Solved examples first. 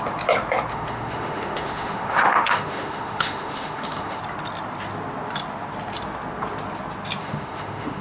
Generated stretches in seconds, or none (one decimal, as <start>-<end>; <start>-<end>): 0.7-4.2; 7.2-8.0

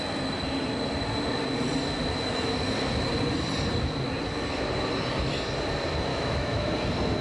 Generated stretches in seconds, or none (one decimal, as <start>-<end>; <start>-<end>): 6.1-6.7

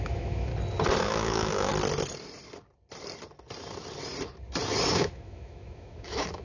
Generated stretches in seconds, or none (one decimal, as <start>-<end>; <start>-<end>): 0.0-0.5; 1.0-1.7; 4.9-6.4

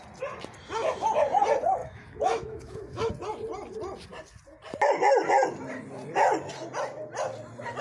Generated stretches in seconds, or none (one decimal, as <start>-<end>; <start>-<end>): 1.8-3.1

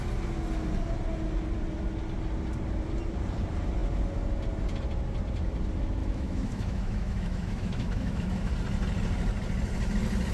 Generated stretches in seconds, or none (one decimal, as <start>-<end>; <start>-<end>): 6.0-8.5

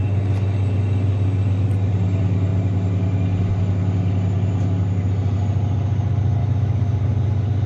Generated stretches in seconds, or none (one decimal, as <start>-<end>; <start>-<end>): 6.4-7.0

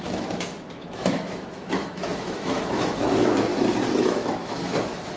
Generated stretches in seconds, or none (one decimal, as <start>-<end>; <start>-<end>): 0.0-3.5; 4.0-5.2